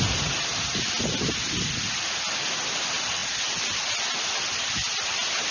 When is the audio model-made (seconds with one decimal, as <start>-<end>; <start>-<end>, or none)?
none